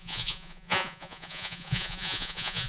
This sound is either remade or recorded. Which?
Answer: remade